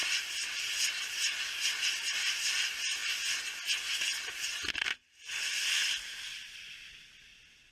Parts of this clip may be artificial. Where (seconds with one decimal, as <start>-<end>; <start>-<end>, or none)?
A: none